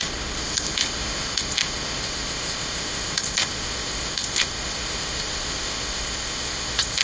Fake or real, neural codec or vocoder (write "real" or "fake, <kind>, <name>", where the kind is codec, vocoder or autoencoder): fake, codec, ZipCodec